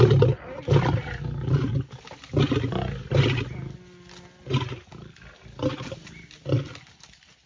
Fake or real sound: real